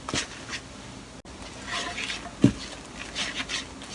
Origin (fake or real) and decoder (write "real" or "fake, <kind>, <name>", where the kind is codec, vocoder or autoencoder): real